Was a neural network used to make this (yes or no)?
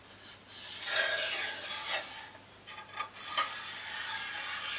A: no